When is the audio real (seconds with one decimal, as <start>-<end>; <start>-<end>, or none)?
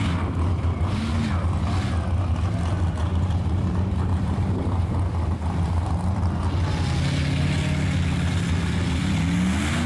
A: 0.0-3.0; 4.8-9.9